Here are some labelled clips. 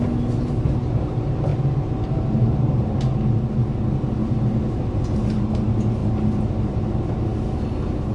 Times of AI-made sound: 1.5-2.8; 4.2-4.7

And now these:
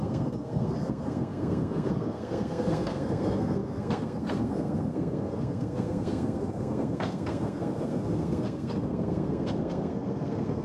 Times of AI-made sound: 0.0-10.6

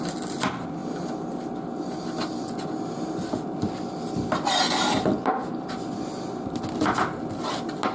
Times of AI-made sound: none

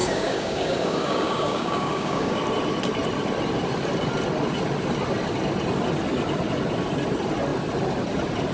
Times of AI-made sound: 0.0-2.4

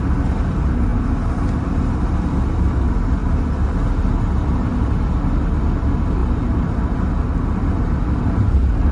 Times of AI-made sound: none

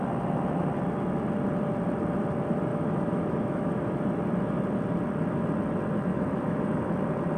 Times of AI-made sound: 2.7-3.9; 6.1-6.9

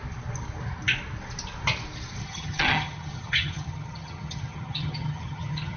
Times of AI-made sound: 2.2-5.8

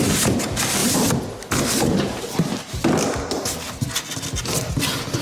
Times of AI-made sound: none